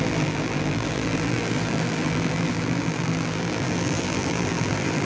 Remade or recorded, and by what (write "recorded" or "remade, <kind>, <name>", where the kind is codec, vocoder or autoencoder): remade, vocoder, BigVGAN v2